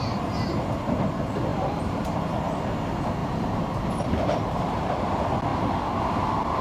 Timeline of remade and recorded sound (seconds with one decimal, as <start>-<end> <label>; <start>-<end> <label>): 0.0-1.5 recorded; 1.5-2.2 remade; 2.2-3.2 recorded; 3.2-5.0 remade; 5.0-6.6 recorded

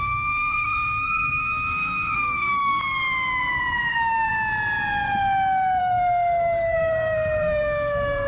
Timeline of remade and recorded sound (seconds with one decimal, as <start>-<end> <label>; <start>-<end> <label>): 0.0-2.8 remade; 2.8-3.9 recorded; 3.9-4.3 remade; 4.3-5.8 recorded; 5.8-8.3 remade

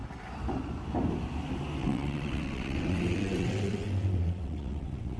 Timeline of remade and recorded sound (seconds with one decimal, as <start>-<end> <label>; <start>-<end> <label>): 0.0-1.8 recorded; 1.8-5.2 remade